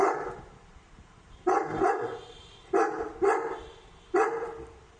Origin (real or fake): fake